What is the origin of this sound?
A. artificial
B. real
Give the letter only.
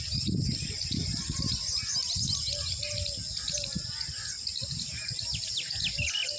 B